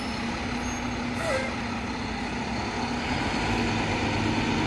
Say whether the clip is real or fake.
real